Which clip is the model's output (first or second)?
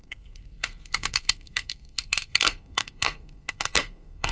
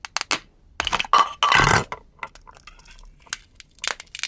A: first